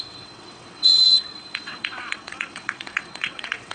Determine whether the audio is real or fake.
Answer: fake